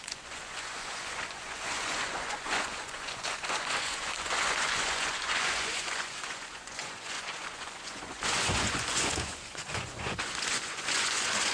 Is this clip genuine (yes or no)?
no